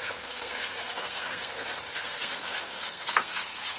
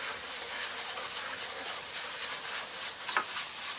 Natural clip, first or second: second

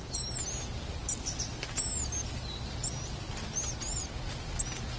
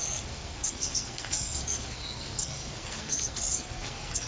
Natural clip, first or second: first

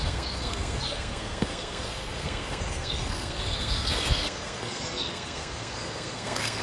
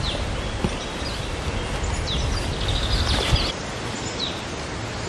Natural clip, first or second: second